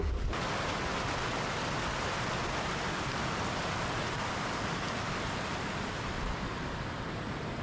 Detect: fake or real real